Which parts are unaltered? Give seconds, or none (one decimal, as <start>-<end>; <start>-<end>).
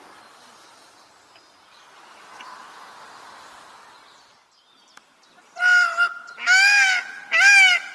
0.0-7.9